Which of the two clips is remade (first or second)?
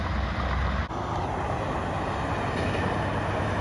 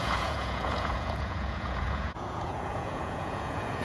second